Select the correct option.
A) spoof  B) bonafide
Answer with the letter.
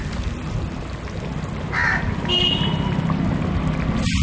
B